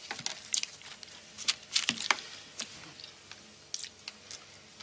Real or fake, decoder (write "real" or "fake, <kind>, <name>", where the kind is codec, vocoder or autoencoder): real